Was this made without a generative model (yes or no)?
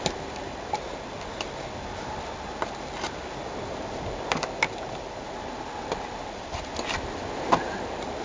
yes